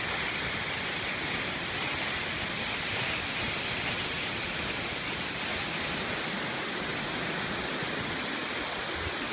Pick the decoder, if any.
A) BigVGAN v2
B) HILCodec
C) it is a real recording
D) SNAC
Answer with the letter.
C